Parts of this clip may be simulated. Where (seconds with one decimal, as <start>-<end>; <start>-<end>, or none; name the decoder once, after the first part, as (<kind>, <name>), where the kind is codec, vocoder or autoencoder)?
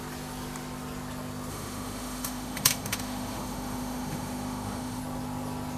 1.5-5.0 (autoencoder, DAC-VAE)